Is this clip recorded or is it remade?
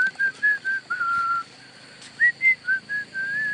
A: recorded